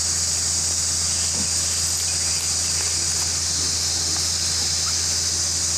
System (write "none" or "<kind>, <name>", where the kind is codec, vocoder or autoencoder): none